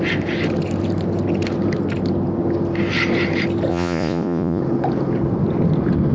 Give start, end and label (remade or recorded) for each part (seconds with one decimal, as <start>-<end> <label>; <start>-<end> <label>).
0.0-3.7 recorded; 3.7-4.6 remade; 4.6-6.1 recorded